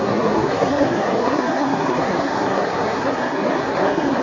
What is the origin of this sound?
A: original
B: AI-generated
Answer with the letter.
B